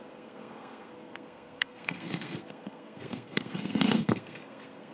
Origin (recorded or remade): remade